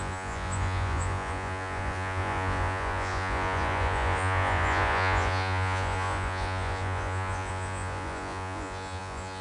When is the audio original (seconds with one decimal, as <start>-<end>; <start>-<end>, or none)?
none